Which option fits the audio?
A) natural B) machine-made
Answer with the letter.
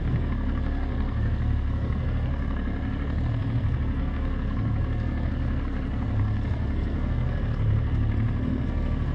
B